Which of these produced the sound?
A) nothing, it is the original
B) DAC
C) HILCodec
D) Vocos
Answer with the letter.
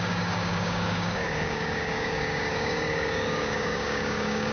B